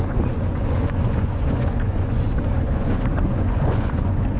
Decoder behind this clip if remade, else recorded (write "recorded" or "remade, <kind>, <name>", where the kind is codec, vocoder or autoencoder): remade, vocoder, Vocos